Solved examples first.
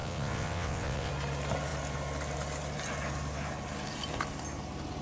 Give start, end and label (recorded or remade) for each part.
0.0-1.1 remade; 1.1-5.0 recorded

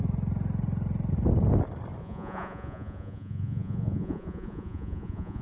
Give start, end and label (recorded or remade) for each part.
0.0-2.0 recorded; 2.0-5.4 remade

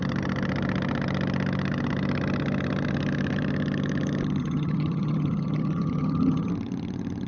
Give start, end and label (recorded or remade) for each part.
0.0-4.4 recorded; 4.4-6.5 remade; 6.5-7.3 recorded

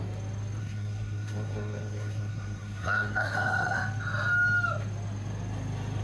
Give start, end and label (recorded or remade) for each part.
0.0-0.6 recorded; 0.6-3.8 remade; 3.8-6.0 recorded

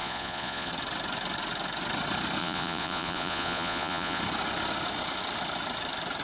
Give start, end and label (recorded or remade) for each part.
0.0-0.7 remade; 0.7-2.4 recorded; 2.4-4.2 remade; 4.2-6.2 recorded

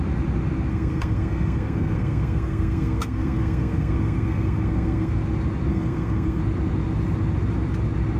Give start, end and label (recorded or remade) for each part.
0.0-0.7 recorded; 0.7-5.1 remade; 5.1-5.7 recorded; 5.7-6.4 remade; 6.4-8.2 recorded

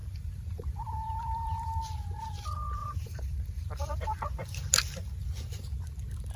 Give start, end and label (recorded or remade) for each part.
0.0-1.8 remade; 1.8-2.8 recorded; 2.8-4.6 remade; 4.6-6.4 recorded

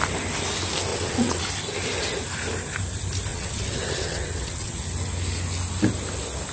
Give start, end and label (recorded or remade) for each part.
0.0-0.9 recorded; 0.9-1.4 remade; 1.4-3.3 recorded; 3.3-4.8 remade; 4.8-6.5 recorded